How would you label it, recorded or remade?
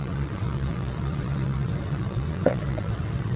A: remade